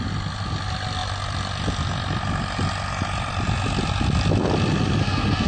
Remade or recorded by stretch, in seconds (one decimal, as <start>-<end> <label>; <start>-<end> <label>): 0.0-5.0 recorded; 5.0-5.5 remade